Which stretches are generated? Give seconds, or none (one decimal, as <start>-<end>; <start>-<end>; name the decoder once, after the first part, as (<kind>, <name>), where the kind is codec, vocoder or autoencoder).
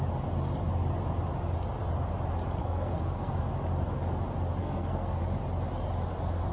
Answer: 2.6-3.3 (codec, SNAC); 4.6-5.2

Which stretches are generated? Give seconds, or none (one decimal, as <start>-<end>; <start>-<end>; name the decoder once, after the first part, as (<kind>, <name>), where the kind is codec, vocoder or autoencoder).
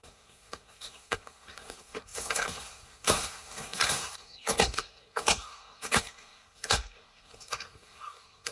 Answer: 0.0-8.5 (codec, SNAC)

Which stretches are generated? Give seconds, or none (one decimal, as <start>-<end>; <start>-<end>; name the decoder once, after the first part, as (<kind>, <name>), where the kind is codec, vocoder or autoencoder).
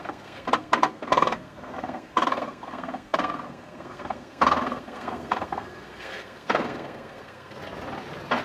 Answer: 0.0-7.6 (codec, SNAC)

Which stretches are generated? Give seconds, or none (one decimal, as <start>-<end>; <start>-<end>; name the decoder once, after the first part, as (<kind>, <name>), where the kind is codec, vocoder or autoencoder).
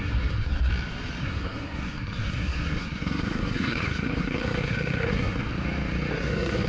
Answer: 0.0-0.7 (codec, SNAC); 1.2-5.5; 6.1-6.7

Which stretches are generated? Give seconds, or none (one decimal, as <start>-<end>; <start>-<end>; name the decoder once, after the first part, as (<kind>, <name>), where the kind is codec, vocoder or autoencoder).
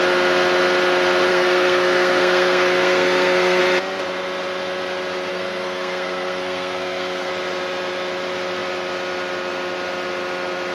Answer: 1.3-3.6 (codec, SNAC); 5.3-7.3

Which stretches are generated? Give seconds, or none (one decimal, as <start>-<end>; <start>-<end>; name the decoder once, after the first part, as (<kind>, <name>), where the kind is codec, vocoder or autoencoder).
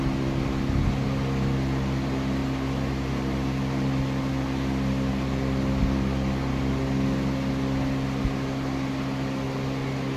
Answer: none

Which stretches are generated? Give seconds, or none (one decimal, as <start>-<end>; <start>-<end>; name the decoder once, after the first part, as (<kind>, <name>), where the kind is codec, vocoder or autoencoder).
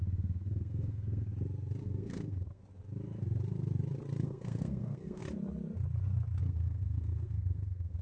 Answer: 0.0-1.3 (codec, SNAC); 1.8-2.6; 4.2-5.2; 6.4-8.0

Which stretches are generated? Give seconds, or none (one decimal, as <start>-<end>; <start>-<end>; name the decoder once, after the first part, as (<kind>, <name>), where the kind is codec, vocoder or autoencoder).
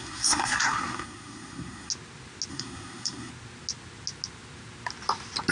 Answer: 0.0-1.9 (codec, SNAC); 2.5-3.3